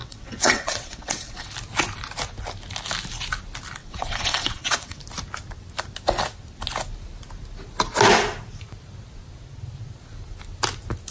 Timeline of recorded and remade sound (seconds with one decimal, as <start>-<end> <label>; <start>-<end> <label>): 0.0-1.5 remade; 1.5-3.8 recorded; 3.8-5.0 remade; 5.0-11.1 recorded